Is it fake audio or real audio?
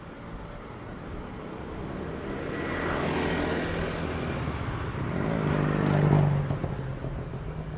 real